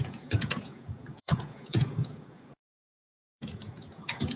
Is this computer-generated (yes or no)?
yes